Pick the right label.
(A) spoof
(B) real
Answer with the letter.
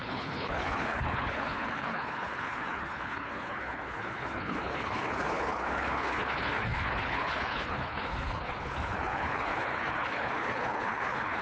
A